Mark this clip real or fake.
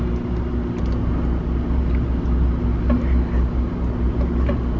real